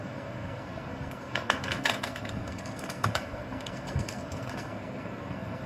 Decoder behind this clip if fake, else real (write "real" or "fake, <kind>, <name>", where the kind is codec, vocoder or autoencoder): fake, codec, SNAC